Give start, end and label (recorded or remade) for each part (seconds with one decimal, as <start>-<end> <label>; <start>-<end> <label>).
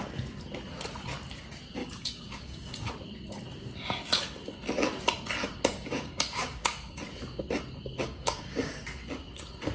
0.0-1.8 recorded; 1.8-2.9 remade; 2.9-5.7 recorded; 5.7-7.0 remade; 7.0-8.0 recorded; 8.0-8.7 remade; 8.7-9.7 recorded